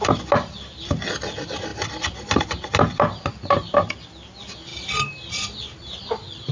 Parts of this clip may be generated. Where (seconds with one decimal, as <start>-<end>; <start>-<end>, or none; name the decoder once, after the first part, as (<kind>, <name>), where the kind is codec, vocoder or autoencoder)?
none